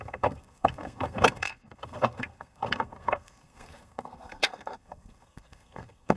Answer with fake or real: fake